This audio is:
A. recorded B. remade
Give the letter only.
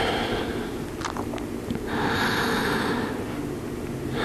A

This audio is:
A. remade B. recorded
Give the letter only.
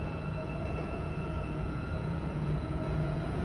A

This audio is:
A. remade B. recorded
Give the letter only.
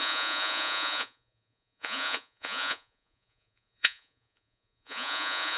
A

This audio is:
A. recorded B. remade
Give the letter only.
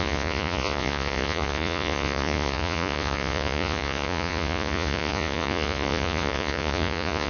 B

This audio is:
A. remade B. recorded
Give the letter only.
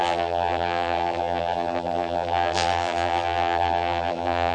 A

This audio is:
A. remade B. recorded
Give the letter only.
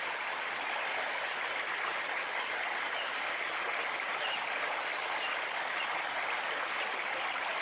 B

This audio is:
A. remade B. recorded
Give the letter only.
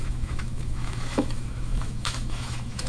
A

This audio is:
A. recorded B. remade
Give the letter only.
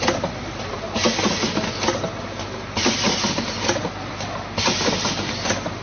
A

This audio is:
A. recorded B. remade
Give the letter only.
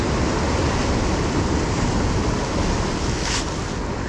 A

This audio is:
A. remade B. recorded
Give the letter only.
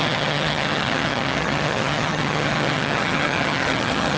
A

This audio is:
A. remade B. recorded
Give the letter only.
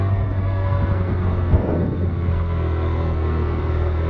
A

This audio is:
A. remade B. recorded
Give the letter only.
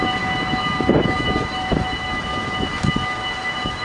A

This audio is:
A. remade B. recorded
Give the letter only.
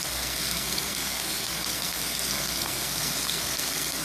A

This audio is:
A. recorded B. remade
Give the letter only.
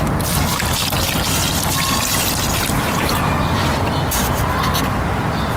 A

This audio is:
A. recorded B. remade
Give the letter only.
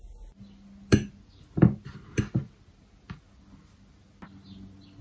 A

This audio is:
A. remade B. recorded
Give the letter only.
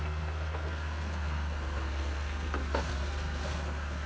A